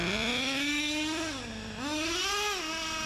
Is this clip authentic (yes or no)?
yes